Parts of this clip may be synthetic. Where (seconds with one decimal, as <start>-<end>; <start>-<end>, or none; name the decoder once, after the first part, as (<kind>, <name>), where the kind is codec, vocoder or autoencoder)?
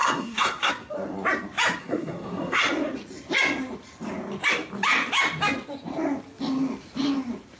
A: 0.0-0.7 (codec, SNAC); 1.8-2.6